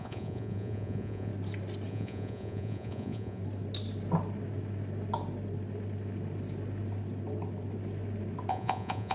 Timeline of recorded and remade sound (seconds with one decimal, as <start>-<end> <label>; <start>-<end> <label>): 0.0-1.3 remade; 1.3-1.9 recorded; 1.9-3.4 remade; 3.4-8.5 recorded; 8.5-9.1 remade